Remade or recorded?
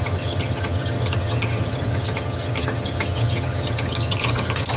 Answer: remade